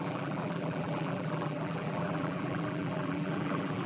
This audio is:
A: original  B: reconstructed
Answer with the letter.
B